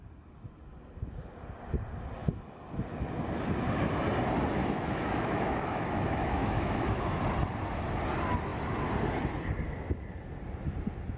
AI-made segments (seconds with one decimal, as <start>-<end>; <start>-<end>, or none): 4.6-7.2